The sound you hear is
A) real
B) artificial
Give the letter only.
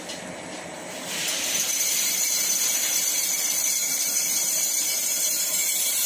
A